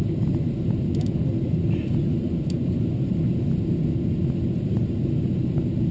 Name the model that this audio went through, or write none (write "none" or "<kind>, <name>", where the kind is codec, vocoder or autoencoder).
none